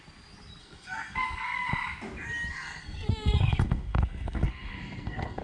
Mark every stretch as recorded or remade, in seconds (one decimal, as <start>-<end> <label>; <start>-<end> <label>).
0.0-0.6 recorded; 0.6-1.7 remade; 1.7-2.5 recorded; 2.5-5.4 remade